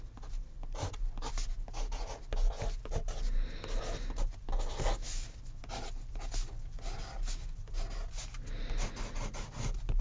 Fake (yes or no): no